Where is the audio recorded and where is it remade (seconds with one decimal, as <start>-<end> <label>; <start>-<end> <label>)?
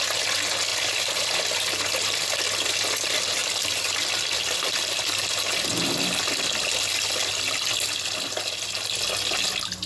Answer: 0.0-0.7 recorded; 0.7-2.4 remade; 2.4-3.4 recorded; 3.4-5.0 remade; 5.0-9.9 recorded